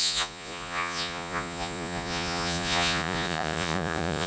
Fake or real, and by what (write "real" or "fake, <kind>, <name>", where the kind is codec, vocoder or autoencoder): fake, vocoder, Vocos